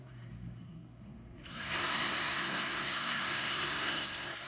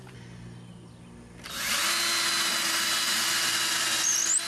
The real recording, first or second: second